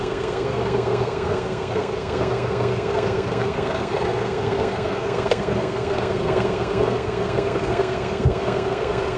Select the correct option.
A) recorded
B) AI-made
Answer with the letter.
B